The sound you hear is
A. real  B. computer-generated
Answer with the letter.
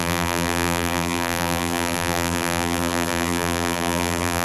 B